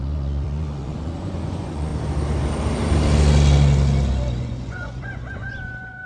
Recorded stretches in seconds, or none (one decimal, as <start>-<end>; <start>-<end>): 1.9-4.4